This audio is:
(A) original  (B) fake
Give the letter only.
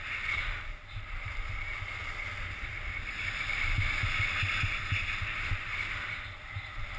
A